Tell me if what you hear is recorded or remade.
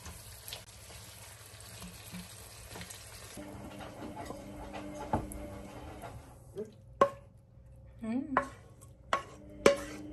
recorded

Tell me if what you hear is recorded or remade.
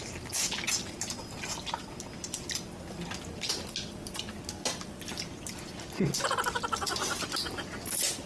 recorded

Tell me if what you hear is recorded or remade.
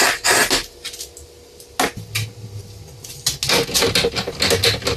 recorded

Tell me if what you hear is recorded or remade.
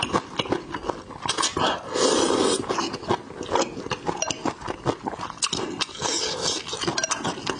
recorded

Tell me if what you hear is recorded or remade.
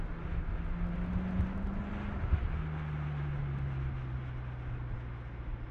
recorded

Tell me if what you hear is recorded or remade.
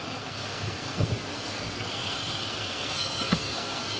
remade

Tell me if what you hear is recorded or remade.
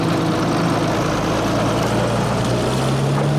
recorded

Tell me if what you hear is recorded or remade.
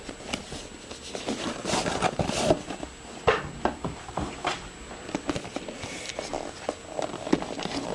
recorded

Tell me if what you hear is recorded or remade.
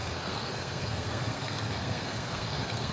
remade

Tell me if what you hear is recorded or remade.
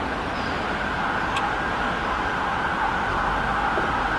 recorded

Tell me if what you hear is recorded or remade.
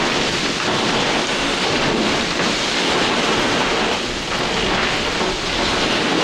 recorded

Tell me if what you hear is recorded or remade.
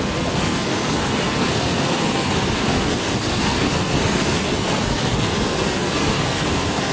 remade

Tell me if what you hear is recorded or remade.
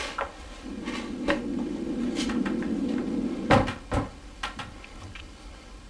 recorded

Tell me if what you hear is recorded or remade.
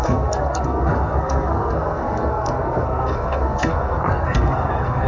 remade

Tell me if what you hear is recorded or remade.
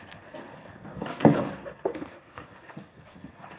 remade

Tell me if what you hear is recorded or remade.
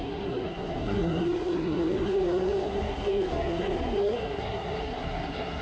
remade